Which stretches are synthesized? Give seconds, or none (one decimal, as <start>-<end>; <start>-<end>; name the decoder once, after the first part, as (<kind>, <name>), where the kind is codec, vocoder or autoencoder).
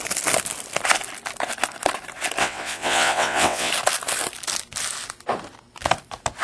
2.4-3.7 (vocoder, WaveNeXt)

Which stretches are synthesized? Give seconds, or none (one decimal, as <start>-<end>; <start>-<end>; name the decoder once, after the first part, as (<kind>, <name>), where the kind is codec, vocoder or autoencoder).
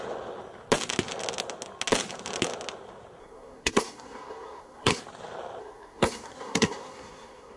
3.2-5.0 (codec, SNAC); 5.6-7.6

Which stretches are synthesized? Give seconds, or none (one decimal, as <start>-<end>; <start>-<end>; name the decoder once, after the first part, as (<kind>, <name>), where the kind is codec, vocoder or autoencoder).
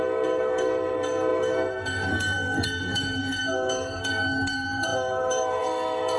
0.0-6.2 (codec, SNAC)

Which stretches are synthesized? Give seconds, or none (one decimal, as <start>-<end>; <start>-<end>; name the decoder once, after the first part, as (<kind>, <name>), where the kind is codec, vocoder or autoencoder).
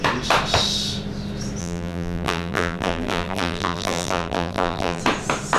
1.6-5.0 (vocoder, BigVGAN v2)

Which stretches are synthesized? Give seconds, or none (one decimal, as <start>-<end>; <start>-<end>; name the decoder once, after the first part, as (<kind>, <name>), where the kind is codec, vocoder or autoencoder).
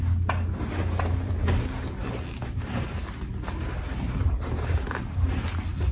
none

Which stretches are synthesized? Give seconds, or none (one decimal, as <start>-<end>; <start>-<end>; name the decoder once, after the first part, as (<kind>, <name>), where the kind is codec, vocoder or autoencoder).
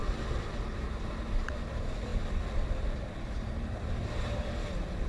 0.0-2.1 (vocoder, BigVGAN v2); 3.5-5.1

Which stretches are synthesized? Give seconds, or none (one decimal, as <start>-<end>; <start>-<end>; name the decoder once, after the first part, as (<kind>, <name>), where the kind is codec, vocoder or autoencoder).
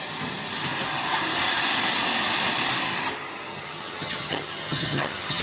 3.5-5.4 (vocoder, HiFi-GAN)